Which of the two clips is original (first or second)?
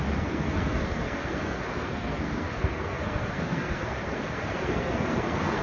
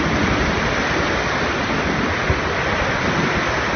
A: second